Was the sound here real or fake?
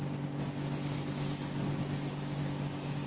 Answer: real